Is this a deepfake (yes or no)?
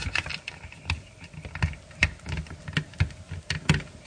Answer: no